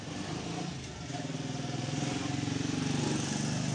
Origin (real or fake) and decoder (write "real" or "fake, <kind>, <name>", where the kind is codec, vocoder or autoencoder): real